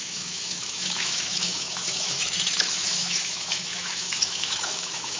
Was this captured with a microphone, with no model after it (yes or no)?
no